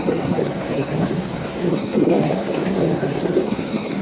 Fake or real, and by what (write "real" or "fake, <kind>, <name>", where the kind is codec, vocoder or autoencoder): fake, codec, SNAC